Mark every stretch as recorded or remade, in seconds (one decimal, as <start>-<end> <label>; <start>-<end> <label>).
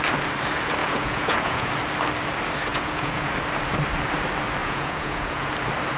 0.0-0.8 recorded; 0.8-1.7 remade; 1.7-2.7 recorded; 2.7-3.3 remade; 3.3-4.6 recorded; 4.6-5.5 remade; 5.5-6.0 recorded